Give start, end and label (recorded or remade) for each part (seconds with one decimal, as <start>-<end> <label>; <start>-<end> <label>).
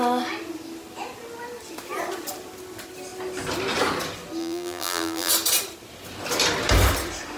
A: 0.0-4.4 recorded; 4.4-5.3 remade; 5.3-7.4 recorded